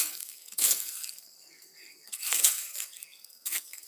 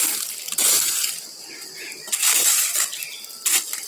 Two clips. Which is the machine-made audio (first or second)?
first